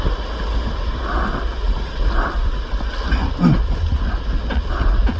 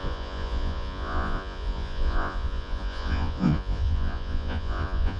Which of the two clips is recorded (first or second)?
first